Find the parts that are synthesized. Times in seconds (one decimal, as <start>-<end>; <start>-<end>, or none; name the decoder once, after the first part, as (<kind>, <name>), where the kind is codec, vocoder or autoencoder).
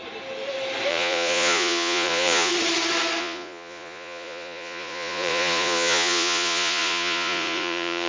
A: 0.9-2.5 (vocoder, Vocos); 3.2-8.1